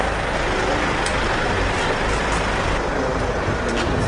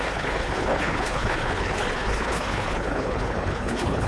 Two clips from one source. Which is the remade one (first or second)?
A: second